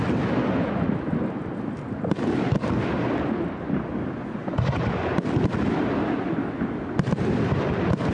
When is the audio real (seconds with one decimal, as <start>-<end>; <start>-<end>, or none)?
0.0-8.1